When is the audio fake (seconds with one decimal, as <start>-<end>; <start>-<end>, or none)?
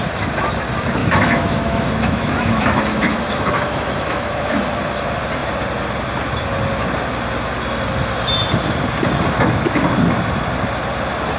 1.0-4.6